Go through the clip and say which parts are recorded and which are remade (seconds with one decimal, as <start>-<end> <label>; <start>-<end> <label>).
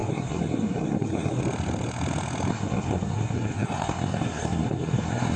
0.0-1.4 remade; 1.4-2.5 recorded; 2.5-5.4 remade